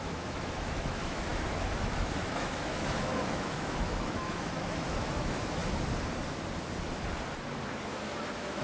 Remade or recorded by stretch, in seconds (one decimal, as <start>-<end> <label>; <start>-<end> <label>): 0.0-5.6 remade; 5.6-7.8 recorded; 7.8-8.6 remade